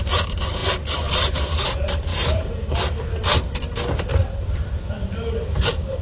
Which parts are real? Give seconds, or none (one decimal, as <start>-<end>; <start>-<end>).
none